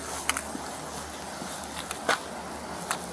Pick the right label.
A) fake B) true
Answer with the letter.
B